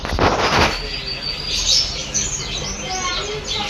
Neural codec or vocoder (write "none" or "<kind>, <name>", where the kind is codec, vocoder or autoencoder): none